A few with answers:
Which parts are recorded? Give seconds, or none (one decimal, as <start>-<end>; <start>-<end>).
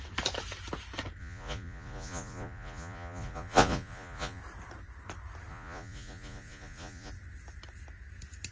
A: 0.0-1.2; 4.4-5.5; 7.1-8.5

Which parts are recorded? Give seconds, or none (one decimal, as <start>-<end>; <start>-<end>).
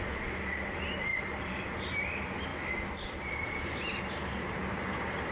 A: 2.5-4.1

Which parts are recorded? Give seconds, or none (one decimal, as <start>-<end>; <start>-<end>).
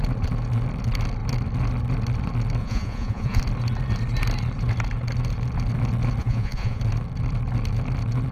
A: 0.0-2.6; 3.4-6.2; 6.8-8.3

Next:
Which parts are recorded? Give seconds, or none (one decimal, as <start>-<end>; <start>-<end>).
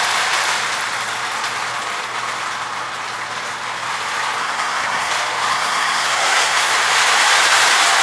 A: 0.0-4.4; 5.1-5.5; 6.7-8.0